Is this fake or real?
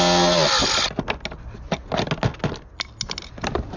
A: real